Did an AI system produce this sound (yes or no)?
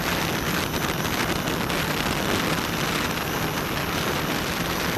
no